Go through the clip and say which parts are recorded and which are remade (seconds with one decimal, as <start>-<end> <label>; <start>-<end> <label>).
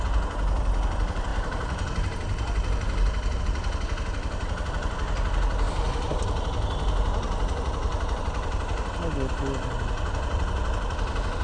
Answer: 0.0-1.3 recorded; 1.3-3.4 remade; 3.4-11.4 recorded